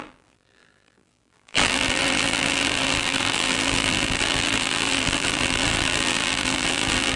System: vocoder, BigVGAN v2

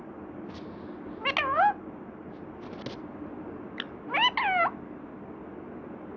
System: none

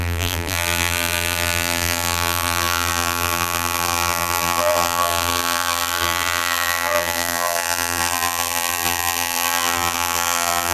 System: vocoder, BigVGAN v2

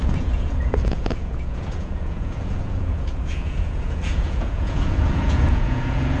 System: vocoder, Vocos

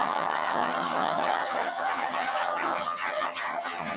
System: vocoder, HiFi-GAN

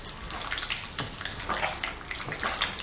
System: none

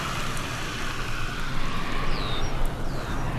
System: none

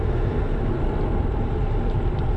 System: none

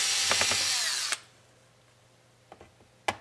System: none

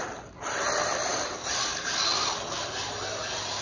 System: none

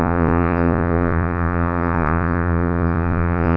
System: vocoder, Vocos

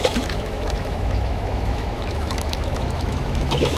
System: autoencoder, DAC-VAE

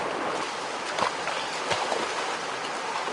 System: none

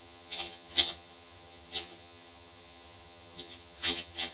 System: vocoder, HiFi-GAN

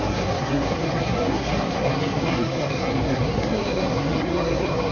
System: codec, SNAC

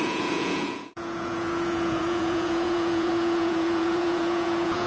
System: vocoder, Vocos